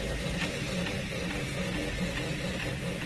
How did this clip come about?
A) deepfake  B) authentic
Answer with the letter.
B